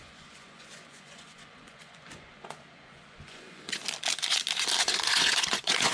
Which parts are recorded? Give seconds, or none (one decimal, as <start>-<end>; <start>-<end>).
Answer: 3.8-4.8